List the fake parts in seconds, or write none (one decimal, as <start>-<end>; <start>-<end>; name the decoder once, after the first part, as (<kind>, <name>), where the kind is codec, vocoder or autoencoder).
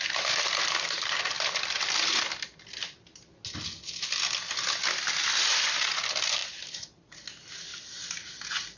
none